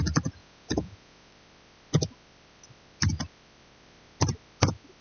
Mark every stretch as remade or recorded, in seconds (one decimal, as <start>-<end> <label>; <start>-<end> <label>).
0.0-0.4 recorded; 0.4-1.3 remade; 1.3-5.0 recorded